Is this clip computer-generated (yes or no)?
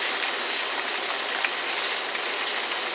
no